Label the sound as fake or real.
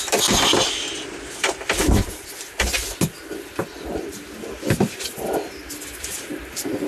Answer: real